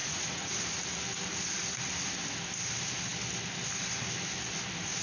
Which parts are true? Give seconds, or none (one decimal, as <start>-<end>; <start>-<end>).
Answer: 0.6-5.0